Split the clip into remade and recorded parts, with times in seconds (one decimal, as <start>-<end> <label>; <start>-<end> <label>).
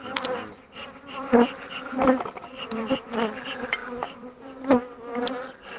0.0-0.5 recorded; 0.5-3.0 remade; 3.0-3.8 recorded; 3.8-4.4 remade; 4.4-5.8 recorded